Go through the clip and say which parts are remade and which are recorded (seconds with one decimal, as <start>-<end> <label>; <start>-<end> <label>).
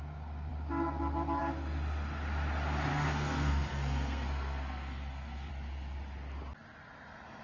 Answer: 0.0-2.9 recorded; 2.9-5.5 remade; 5.5-7.4 recorded